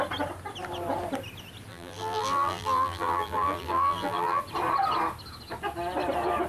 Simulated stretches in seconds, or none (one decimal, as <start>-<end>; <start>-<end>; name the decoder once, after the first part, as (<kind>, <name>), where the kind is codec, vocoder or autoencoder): 1.7-4.4 (vocoder, BigVGAN v2)